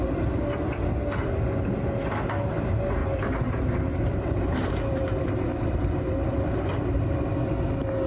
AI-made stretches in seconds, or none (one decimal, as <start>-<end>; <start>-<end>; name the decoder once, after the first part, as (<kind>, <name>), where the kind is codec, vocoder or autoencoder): 3.0-7.3 (vocoder, BigVGAN v2)